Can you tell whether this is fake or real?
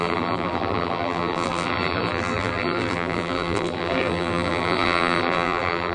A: fake